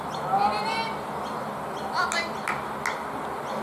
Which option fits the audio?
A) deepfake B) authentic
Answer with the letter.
B